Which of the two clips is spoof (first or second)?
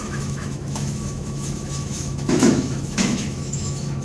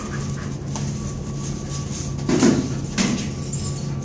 first